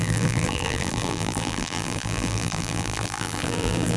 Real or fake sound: fake